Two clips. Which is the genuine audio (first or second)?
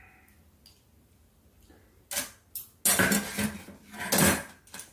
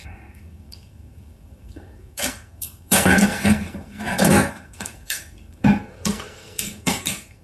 first